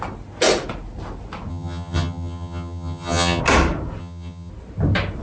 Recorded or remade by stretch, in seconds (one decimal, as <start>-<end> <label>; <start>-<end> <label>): 0.0-1.5 recorded; 1.5-3.4 remade; 3.4-4.0 recorded; 4.0-4.5 remade; 4.5-5.2 recorded